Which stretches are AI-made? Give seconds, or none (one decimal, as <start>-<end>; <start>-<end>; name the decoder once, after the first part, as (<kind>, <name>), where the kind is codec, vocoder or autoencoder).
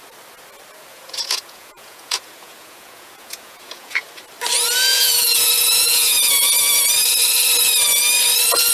0.9-4.1 (vocoder, Vocos); 4.9-6.3